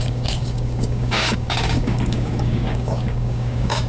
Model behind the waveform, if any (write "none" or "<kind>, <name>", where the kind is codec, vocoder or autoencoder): codec, DAC